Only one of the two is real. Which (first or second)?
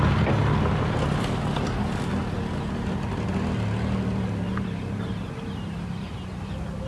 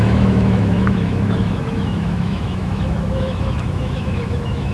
first